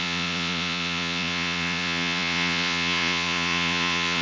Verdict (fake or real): fake